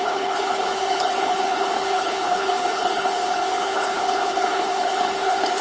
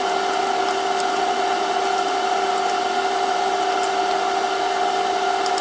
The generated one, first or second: first